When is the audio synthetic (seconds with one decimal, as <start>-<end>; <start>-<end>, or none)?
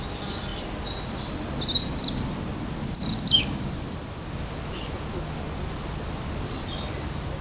none